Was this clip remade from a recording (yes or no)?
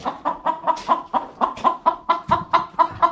no